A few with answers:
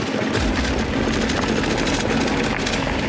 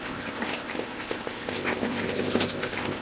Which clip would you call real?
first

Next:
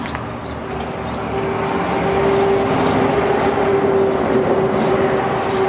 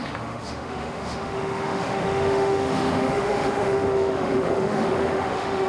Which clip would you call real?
first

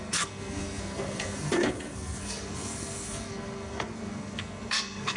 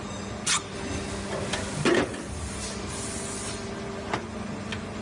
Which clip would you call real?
second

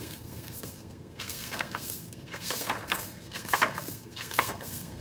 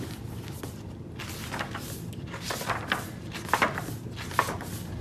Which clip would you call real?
second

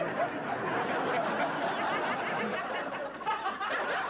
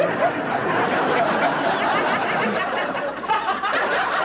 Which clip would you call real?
first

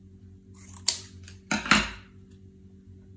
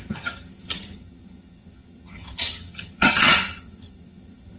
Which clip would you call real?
first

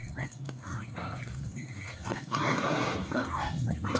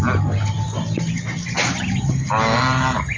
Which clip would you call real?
second